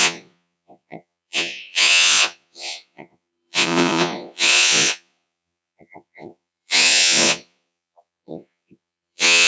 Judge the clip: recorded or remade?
remade